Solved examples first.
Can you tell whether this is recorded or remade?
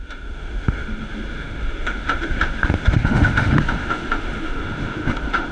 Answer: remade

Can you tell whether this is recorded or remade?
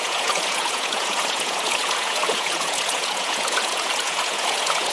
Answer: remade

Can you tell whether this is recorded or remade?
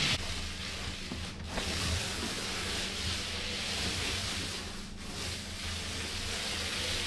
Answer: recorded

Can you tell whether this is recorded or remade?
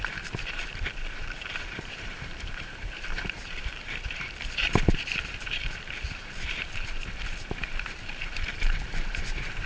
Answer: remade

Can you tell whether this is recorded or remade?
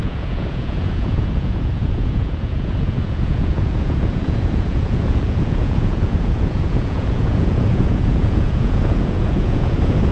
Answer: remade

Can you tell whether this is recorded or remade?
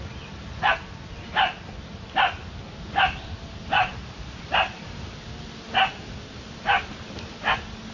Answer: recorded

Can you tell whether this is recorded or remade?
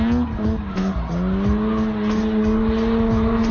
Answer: recorded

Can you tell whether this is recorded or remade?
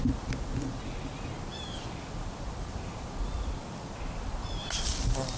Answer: recorded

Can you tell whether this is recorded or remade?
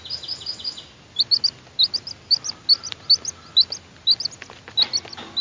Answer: recorded